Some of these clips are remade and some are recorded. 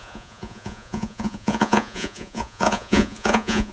remade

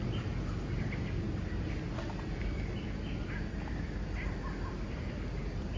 recorded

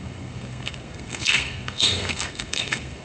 remade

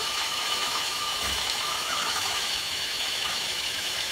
remade